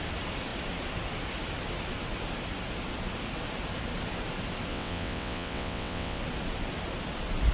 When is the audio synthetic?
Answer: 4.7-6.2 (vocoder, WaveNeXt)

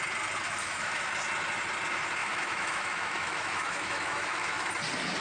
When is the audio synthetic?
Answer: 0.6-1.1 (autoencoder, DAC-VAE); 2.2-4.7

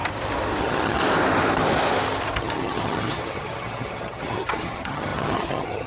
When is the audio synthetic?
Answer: 0.6-1.0 (vocoder, HiFi-GAN); 2.4-5.9

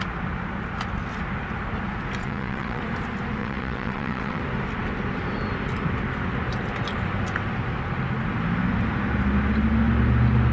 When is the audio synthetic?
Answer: 2.2-2.8 (vocoder, WaveNeXt); 3.4-4.4

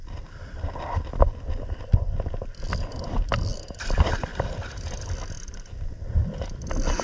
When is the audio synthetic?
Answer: none

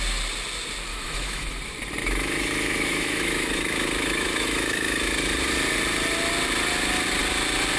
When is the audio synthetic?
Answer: 0.9-1.6 (autoencoder, DAC-VAE); 2.0-5.0

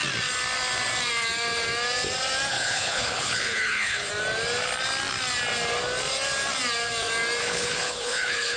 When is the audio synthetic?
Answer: 2.5-4.1 (codec, HILCodec); 7.4-8.6